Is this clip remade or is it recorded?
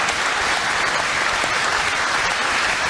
recorded